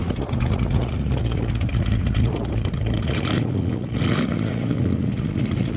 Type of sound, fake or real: fake